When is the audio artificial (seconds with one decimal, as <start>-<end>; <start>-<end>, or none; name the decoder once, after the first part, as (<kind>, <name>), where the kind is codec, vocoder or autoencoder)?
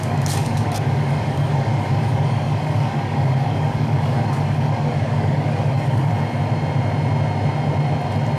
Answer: 0.0-6.1 (codec, DAC)